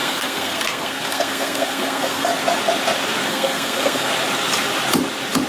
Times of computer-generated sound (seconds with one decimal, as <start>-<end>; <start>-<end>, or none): 0.0-2.3; 3.3-4.1

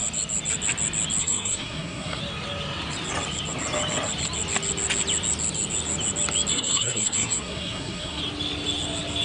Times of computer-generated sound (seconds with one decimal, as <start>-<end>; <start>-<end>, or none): 1.2-2.2; 6.5-8.2

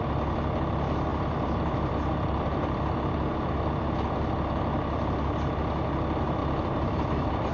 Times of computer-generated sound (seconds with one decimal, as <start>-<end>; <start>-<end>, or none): 1.1-3.7; 6.4-7.5

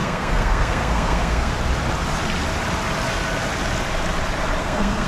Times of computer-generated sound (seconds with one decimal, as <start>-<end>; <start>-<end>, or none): 0.0-1.5; 4.6-5.1

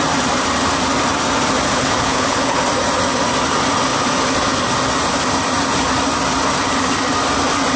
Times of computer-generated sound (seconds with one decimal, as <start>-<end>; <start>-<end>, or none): 1.7-2.6

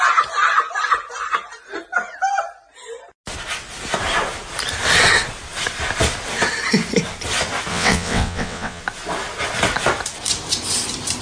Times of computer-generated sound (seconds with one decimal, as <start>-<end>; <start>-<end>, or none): 7.7-8.8

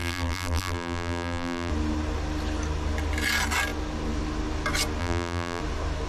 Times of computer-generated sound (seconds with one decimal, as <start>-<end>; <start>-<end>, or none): 0.0-1.7; 5.0-5.6